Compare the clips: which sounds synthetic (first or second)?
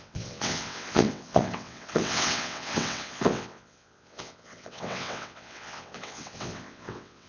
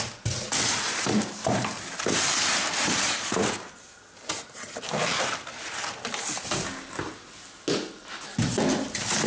first